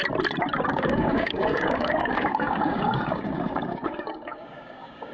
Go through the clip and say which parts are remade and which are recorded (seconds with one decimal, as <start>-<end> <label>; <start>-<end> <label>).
0.0-0.7 recorded; 0.7-5.1 remade